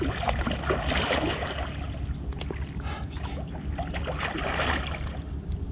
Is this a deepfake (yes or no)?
no